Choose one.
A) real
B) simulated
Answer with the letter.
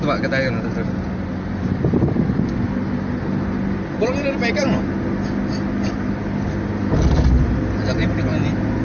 A